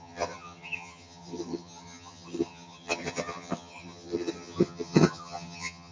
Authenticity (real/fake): fake